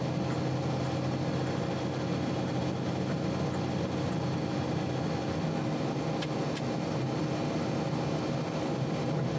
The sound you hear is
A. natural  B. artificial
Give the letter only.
A